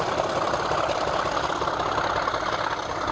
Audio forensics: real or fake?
real